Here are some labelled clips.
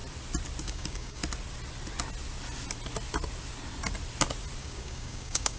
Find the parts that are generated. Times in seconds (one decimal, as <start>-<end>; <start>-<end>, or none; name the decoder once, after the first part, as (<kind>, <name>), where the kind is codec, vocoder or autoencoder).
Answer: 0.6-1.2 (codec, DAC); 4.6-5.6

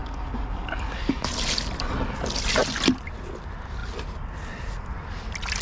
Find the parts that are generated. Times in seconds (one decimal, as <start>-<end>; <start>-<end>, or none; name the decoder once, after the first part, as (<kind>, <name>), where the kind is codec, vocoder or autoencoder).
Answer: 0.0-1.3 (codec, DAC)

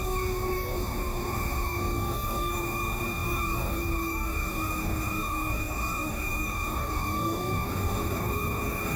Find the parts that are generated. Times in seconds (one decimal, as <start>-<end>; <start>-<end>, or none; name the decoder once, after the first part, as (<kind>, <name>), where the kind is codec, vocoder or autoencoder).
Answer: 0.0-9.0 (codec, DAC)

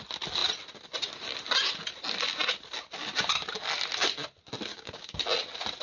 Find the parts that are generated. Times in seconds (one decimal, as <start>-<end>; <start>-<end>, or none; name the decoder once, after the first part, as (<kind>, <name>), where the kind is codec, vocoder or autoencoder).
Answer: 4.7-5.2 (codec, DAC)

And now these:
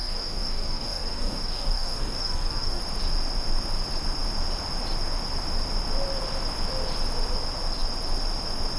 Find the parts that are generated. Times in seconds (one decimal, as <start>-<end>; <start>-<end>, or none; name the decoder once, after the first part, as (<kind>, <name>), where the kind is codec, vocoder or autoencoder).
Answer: 0.0-2.8 (codec, DAC)

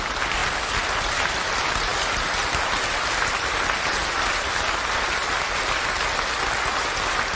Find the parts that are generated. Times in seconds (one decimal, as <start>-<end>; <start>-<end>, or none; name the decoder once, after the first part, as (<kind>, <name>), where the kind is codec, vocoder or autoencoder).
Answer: none

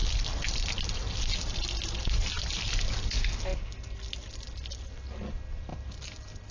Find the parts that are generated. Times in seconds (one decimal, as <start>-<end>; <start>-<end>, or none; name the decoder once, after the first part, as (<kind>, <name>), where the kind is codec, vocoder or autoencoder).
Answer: none

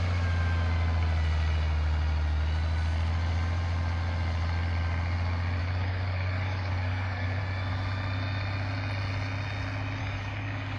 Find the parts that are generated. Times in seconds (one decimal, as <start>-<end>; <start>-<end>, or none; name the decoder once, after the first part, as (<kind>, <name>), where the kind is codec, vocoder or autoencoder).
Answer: 5.6-7.4 (codec, DAC); 10.0-10.8